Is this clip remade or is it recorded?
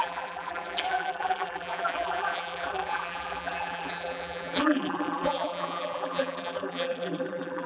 remade